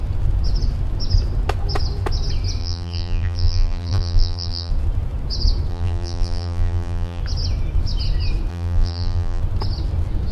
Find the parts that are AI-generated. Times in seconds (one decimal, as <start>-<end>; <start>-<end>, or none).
2.6-4.7; 5.7-7.2; 8.5-9.4